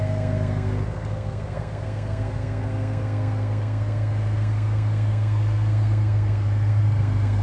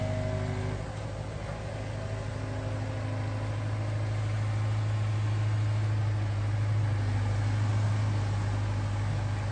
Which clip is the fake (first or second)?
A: first